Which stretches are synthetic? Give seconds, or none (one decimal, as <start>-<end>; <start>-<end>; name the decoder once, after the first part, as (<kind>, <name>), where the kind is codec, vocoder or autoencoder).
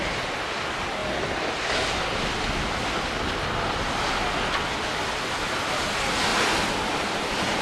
none